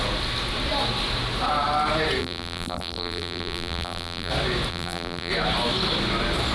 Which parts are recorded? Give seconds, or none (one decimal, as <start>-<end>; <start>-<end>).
0.0-2.2; 4.3-4.7; 5.3-6.5